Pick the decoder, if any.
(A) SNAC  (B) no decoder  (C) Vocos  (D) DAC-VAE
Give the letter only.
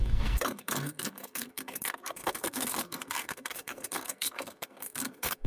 A